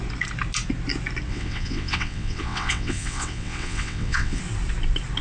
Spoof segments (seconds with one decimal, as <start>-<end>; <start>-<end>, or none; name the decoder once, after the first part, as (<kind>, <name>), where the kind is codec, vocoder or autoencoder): 1.3-4.4 (vocoder, WaveNeXt)